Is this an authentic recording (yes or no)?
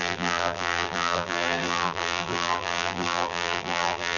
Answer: no